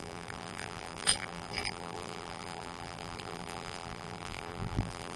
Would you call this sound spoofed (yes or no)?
yes